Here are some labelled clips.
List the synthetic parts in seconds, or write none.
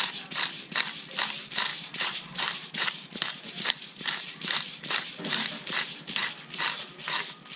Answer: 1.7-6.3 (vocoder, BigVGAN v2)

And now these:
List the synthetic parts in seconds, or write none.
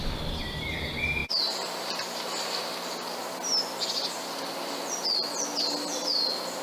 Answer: none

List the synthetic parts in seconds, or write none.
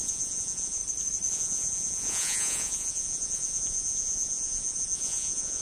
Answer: 0.0-0.8 (vocoder, Vocos); 1.3-5.6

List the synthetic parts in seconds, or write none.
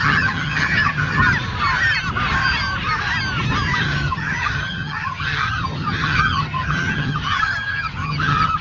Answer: 0.0-1.2 (vocoder, HiFi-GAN); 3.8-8.6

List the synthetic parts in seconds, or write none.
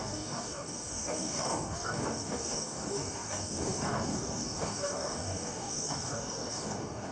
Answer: 0.0-7.1 (codec, DAC)